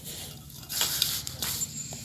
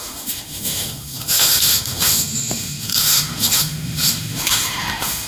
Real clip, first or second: first